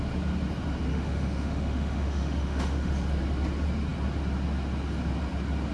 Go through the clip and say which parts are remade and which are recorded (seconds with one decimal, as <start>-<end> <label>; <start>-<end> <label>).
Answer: 0.0-0.9 recorded; 0.9-2.9 remade; 2.9-5.7 recorded